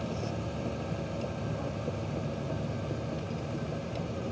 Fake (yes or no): no